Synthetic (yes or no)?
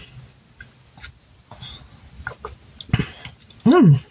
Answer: no